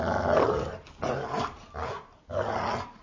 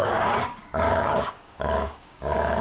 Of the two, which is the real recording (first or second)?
first